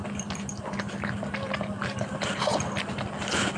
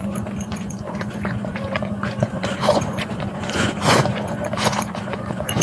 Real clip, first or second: first